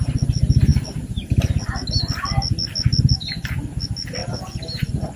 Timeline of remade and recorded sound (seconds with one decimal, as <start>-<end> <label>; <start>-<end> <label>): 0.0-5.2 recorded